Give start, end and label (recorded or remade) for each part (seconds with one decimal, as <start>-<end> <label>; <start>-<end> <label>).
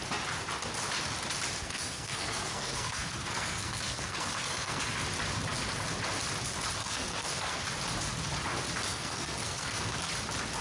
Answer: 0.0-1.6 recorded; 1.6-4.8 remade; 4.8-6.8 recorded; 6.8-7.6 remade; 7.6-8.9 recorded; 8.9-10.1 remade; 10.1-10.6 recorded